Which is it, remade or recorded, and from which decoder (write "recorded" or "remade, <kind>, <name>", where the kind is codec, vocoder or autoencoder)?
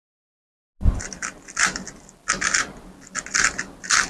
recorded